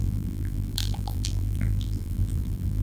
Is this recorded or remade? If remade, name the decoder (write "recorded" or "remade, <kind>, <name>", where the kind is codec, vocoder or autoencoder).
remade, vocoder, BigVGAN v2